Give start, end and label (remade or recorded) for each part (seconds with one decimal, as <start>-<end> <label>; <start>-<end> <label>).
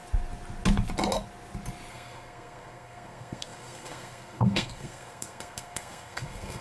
0.0-1.9 recorded; 1.9-6.6 remade